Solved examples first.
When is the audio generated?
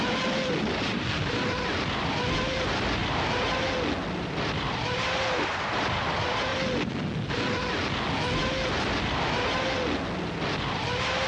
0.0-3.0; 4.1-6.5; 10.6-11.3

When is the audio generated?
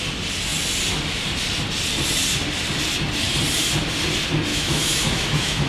4.5-5.7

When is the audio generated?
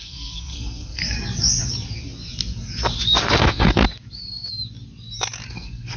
0.0-1.0; 3.4-3.8; 5.5-6.0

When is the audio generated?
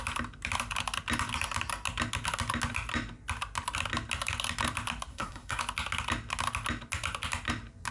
5.1-5.6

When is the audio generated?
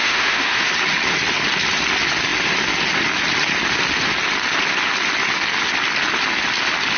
0.0-0.7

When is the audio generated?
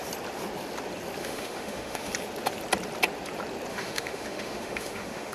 1.2-2.1; 3.7-5.3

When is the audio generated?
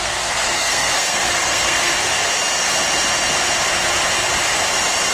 0.0-1.9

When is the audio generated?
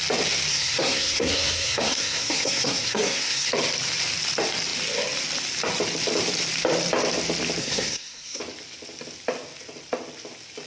0.5-3.5; 7.6-8.4